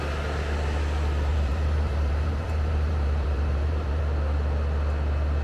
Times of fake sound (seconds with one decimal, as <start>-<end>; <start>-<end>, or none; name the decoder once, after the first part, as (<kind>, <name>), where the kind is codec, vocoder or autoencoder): 1.3-4.0 (vocoder, BigVGAN v2)